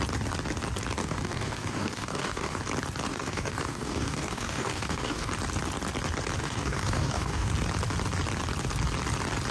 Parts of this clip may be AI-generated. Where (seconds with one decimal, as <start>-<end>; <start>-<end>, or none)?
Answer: 1.0-2.6; 3.1-5.3; 6.4-7.5